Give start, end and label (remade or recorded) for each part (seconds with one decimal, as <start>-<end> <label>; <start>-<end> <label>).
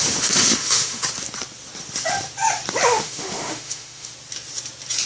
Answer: 0.0-1.0 remade; 1.0-3.0 recorded; 3.0-4.1 remade; 4.1-5.1 recorded